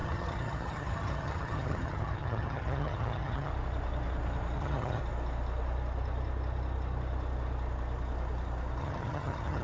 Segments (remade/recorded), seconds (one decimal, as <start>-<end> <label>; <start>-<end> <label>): 0.0-3.5 remade; 3.5-4.6 recorded; 4.6-5.0 remade; 5.0-8.8 recorded; 8.8-9.6 remade